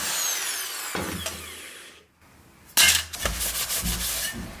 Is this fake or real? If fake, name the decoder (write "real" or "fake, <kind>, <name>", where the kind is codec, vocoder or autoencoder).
real